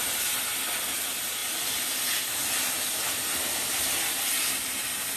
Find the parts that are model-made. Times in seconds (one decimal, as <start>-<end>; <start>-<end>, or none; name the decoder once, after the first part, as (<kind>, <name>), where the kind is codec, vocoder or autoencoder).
none